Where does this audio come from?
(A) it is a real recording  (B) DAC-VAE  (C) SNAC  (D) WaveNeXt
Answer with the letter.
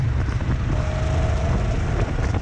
A